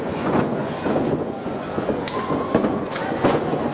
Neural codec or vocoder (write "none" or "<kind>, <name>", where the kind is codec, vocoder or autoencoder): vocoder, Vocos